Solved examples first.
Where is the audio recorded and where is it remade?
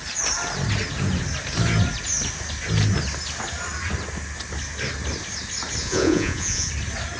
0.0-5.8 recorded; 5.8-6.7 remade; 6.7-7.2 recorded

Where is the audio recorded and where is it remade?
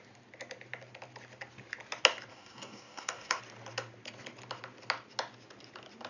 0.0-2.3 recorded; 2.3-3.4 remade; 3.4-6.1 recorded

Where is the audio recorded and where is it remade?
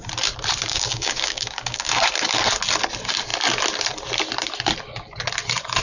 0.0-0.7 recorded; 0.7-1.9 remade; 1.9-5.8 recorded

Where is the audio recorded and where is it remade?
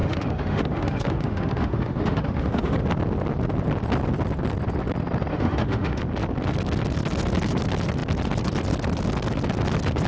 0.0-2.8 remade; 2.8-5.3 recorded; 5.3-6.0 remade; 6.0-10.1 recorded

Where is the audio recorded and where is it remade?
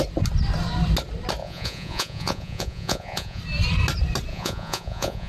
0.0-1.4 recorded; 1.4-3.4 remade; 3.4-4.3 recorded; 4.3-5.3 remade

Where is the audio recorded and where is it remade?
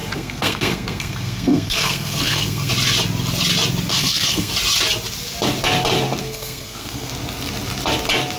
0.0-2.7 remade; 2.7-3.9 recorded; 3.9-4.5 remade; 4.5-6.2 recorded; 6.2-7.1 remade; 7.1-8.4 recorded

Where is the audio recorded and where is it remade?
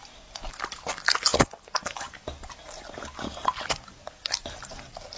0.0-5.2 recorded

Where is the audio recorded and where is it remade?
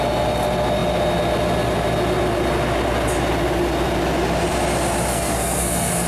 0.0-5.1 recorded; 5.1-6.1 remade